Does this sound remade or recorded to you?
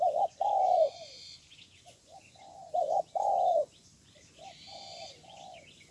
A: remade